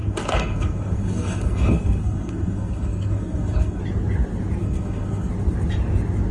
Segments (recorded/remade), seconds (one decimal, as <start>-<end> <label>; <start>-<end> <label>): 0.0-3.8 remade; 3.8-4.6 recorded; 4.6-5.3 remade; 5.3-6.3 recorded